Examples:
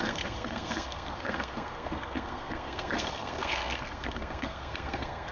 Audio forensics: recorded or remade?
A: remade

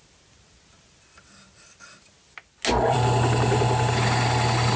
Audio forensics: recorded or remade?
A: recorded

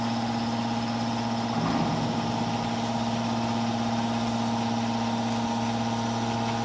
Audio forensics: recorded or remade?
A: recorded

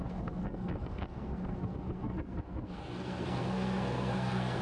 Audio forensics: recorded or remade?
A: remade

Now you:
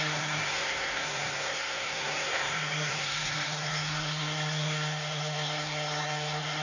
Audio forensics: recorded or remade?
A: remade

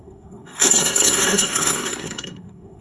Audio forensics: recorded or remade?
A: remade